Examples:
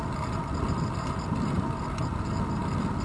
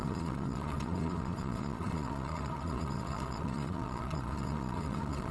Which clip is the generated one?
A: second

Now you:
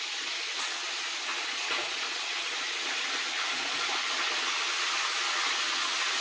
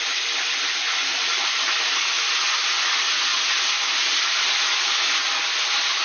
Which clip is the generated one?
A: first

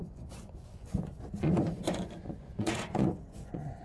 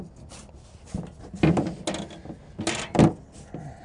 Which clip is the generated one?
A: first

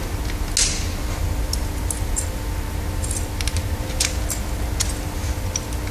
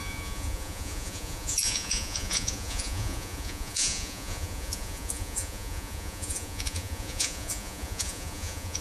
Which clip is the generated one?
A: second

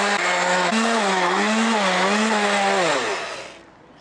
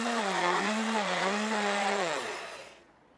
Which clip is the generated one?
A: second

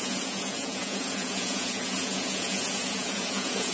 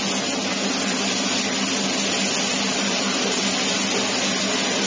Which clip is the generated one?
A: first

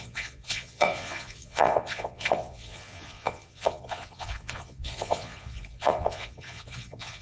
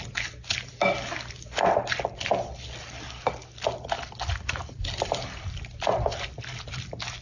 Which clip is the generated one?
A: first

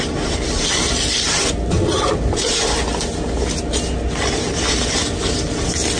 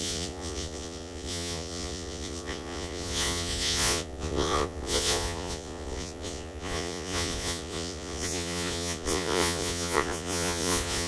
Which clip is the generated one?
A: second